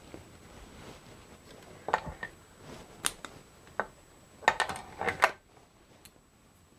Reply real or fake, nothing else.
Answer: real